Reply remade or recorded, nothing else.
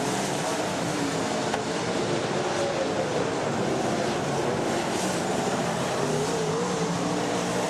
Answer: recorded